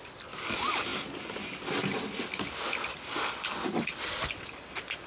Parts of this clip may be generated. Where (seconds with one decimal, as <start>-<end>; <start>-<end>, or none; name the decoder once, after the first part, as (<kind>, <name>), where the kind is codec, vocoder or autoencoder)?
none